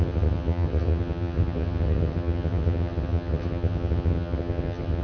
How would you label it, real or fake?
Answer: fake